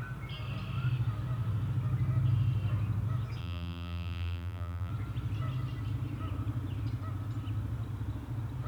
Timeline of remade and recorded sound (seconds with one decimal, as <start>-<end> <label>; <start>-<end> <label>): 0.0-3.4 recorded; 3.4-4.9 remade; 4.9-8.7 recorded